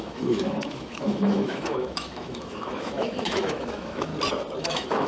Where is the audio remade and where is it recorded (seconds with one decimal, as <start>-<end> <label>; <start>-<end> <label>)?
0.0-4.1 remade; 4.1-4.6 recorded; 4.6-5.1 remade